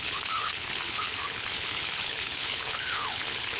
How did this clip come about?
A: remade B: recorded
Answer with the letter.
A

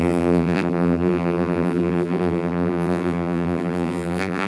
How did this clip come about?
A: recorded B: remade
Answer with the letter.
B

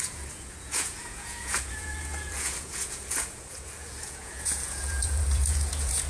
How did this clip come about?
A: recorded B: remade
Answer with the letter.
B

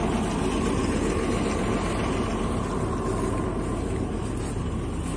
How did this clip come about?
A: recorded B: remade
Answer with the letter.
A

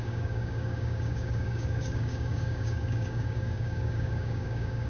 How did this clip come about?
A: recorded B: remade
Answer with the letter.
B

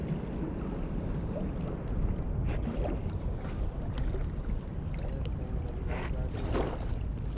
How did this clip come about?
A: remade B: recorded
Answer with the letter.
B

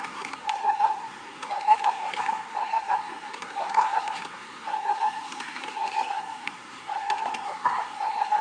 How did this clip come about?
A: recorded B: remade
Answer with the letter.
B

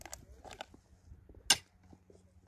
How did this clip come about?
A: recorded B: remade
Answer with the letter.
A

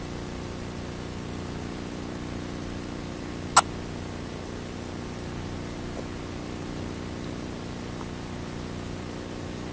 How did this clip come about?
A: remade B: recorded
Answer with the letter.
B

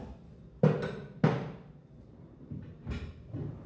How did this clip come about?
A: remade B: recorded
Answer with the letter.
B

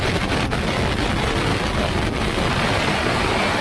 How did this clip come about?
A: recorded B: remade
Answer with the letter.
A